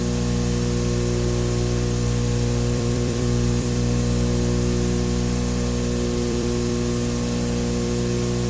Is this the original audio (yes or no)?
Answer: no